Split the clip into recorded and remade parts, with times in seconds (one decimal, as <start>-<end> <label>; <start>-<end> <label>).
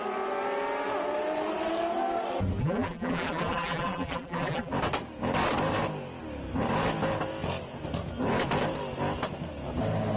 0.0-2.6 recorded; 2.6-4.7 remade; 4.7-10.2 recorded